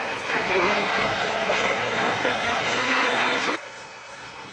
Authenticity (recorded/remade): remade